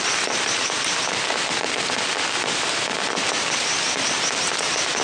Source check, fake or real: real